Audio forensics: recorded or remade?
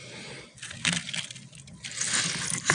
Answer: recorded